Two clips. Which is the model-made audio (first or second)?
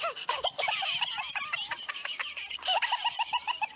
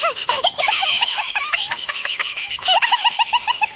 second